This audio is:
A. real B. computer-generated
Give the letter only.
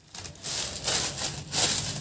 A